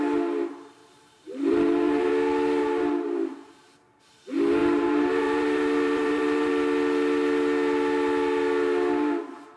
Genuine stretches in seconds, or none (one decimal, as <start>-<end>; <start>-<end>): 0.0-0.8; 2.1-2.6; 4.0-4.6; 6.5-9.6